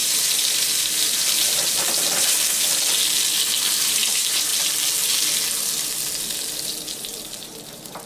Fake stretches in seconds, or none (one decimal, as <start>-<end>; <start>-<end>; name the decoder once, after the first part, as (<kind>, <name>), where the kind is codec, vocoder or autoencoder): 0.0-1.6 (vocoder, BigVGAN v2); 3.7-4.5; 6.6-8.1